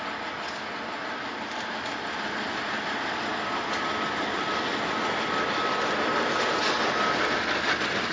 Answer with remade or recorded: recorded